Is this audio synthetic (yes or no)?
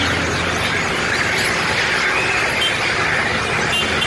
no